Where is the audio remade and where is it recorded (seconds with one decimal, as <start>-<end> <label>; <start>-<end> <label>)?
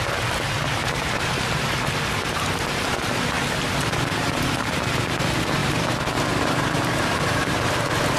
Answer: 0.0-0.8 recorded; 0.8-4.0 remade; 4.0-5.6 recorded; 5.6-7.7 remade; 7.7-8.2 recorded